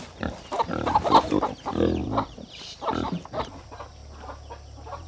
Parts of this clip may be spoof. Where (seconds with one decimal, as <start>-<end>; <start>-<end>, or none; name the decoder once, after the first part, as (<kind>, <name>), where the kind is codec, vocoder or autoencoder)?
2.0-3.6 (vocoder, BigVGAN v2)